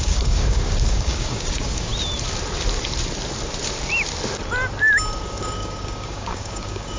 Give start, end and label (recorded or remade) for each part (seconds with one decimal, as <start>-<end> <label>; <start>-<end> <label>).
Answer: 0.0-1.9 remade; 1.9-5.2 recorded; 5.2-7.0 remade